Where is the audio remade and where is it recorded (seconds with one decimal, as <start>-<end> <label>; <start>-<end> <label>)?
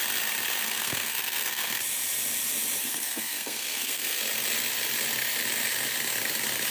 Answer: 0.0-0.7 recorded; 0.7-1.8 remade; 1.8-2.8 recorded; 2.8-4.2 remade; 4.2-6.7 recorded